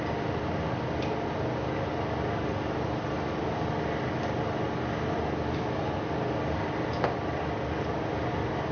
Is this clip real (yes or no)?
yes